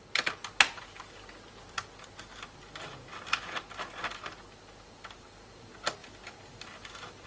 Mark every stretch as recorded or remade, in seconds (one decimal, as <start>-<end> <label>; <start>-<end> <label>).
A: 0.0-7.3 recorded